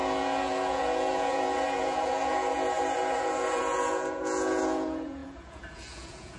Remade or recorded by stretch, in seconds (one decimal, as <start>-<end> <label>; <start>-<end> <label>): 0.0-6.4 remade